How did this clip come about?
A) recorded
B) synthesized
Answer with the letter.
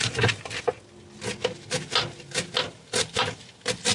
A